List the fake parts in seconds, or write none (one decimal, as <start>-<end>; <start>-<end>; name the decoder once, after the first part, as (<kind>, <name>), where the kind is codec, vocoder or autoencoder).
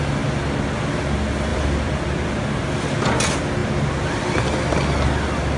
1.5-2.3 (vocoder, BigVGAN v2); 3.6-4.4